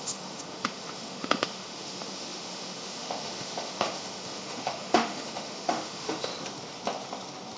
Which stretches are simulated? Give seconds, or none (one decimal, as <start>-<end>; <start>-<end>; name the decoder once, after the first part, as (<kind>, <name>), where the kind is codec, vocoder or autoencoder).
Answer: 0.0-6.3 (autoencoder, DAC-VAE)